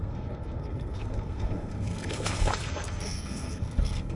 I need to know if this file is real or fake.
fake